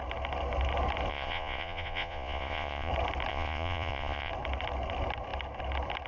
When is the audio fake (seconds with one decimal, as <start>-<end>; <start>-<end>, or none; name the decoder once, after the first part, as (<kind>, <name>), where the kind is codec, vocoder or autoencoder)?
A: 1.1-2.9 (vocoder, Vocos); 3.3-4.3

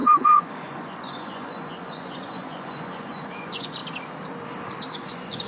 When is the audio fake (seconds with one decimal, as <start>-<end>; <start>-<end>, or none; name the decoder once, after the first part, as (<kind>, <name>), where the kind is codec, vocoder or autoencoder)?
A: 0.0-3.8 (vocoder, Vocos); 5.0-5.5

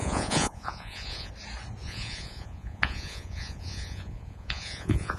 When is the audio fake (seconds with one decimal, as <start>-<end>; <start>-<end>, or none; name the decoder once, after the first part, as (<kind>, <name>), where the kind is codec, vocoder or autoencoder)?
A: 0.0-1.3 (vocoder, Vocos); 1.8-5.2

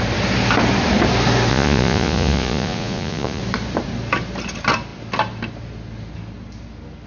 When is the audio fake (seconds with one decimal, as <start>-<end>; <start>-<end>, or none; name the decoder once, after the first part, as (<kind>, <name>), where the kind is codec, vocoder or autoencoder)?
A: 1.5-3.4 (vocoder, Vocos)